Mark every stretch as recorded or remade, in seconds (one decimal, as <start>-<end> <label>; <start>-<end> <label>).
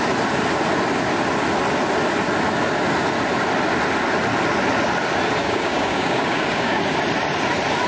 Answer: 0.0-5.4 recorded; 5.4-6.8 remade; 6.8-7.9 recorded